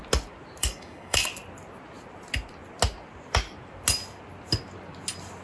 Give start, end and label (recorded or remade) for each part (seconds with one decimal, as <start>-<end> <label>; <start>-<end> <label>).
0.0-0.6 recorded; 0.6-1.3 remade; 1.3-5.4 recorded